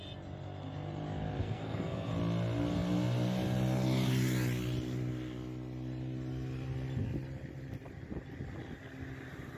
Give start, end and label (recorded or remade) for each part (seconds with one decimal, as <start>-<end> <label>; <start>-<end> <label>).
0.0-1.4 recorded; 1.4-2.1 remade; 2.1-9.6 recorded